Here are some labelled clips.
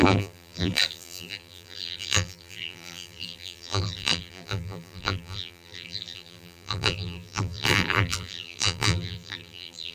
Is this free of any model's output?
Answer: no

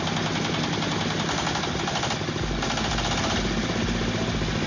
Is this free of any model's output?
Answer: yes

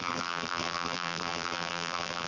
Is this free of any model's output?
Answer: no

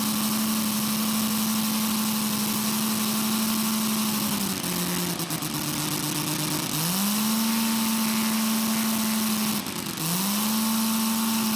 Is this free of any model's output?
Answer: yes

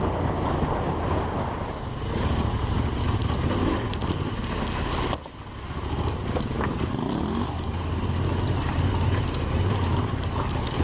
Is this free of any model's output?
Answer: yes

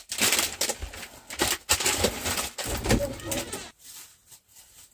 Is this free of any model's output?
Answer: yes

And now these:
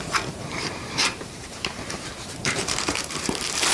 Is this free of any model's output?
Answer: no